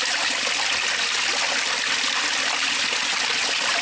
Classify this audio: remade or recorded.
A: recorded